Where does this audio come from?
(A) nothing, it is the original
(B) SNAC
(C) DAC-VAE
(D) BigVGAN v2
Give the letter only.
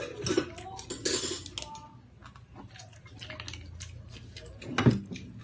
A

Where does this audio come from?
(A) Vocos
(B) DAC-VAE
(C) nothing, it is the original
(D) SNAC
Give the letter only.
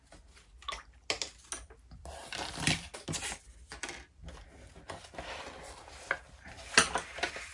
C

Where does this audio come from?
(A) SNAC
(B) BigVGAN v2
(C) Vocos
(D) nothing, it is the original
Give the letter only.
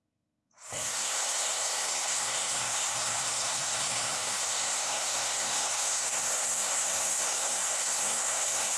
A